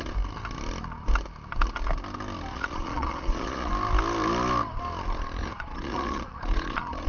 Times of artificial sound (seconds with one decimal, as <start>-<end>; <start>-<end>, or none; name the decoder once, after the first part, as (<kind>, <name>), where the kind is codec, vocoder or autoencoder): 2.5-3.7 (vocoder, Vocos); 5.4-7.1